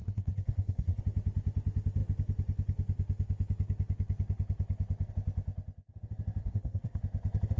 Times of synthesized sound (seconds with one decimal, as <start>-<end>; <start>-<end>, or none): 0.0-1.0; 6.4-7.0